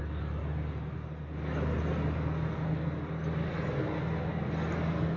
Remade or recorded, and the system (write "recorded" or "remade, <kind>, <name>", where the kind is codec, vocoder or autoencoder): recorded